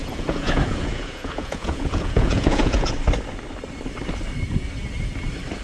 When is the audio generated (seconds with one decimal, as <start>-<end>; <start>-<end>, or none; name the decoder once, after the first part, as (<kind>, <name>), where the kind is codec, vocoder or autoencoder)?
0.0-2.9 (vocoder, Vocos)